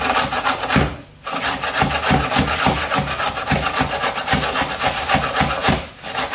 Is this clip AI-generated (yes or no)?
no